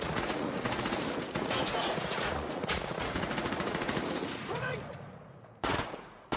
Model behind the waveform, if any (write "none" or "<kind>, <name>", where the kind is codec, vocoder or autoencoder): vocoder, Vocos